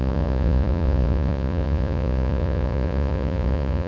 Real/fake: fake